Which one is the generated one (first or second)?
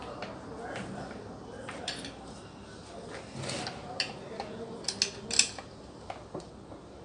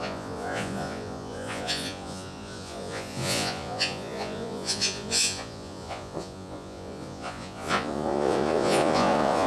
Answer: second